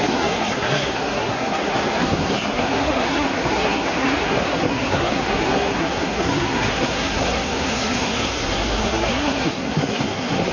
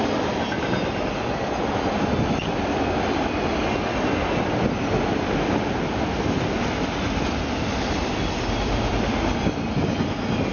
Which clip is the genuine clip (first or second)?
second